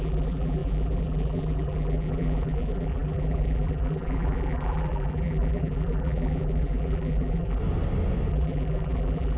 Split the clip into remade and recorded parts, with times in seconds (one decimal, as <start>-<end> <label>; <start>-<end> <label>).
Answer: 0.0-7.6 remade; 7.6-8.3 recorded; 8.3-9.4 remade

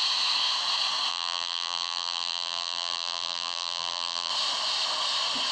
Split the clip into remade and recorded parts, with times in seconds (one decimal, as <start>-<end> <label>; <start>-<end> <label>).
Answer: 0.0-1.1 recorded; 1.1-4.3 remade; 4.3-5.5 recorded

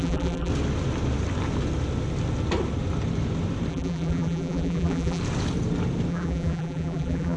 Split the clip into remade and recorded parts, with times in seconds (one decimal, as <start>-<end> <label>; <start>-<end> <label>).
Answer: 0.0-0.5 remade; 0.5-3.7 recorded; 3.7-5.2 remade; 5.2-6.1 recorded; 6.1-7.4 remade